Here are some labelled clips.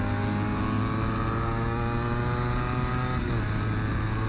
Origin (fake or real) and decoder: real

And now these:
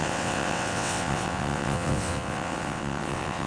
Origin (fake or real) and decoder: fake, vocoder, WaveNeXt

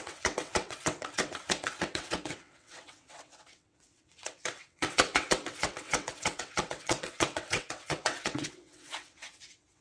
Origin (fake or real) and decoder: fake, vocoder, WaveNeXt